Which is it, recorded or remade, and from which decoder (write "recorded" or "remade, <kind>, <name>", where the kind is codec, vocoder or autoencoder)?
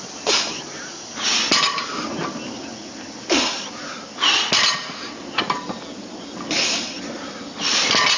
recorded